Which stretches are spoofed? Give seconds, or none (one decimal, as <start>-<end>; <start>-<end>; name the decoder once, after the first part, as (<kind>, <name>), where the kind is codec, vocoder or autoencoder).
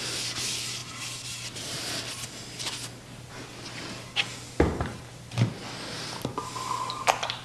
none